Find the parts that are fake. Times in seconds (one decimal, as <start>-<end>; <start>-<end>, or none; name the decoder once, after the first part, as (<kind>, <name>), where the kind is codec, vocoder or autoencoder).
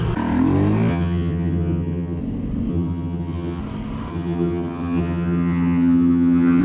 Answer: 0.9-2.2 (vocoder, HiFi-GAN); 2.7-3.6; 4.1-6.6